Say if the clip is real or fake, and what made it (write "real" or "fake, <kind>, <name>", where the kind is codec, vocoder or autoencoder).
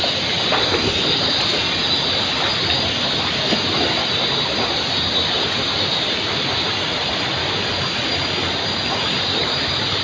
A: real